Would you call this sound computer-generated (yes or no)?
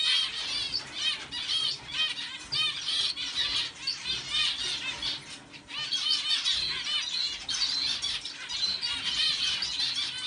no